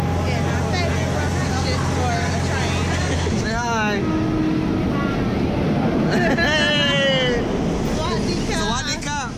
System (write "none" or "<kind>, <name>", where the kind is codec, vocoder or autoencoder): none